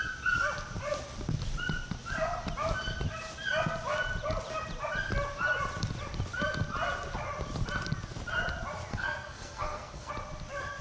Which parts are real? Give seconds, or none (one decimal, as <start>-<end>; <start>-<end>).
0.0-8.9; 10.1-10.8